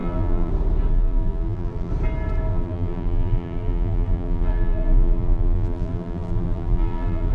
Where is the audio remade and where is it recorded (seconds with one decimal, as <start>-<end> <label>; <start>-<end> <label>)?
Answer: 0.0-0.5 remade; 0.5-0.9 recorded; 0.9-1.9 remade; 1.9-2.5 recorded; 2.5-7.3 remade